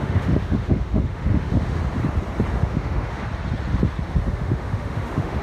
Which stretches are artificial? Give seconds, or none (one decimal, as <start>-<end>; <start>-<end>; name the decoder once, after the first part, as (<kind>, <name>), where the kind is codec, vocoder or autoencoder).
0.0-1.8 (autoencoder, DAC-VAE); 2.5-3.2; 4.3-5.4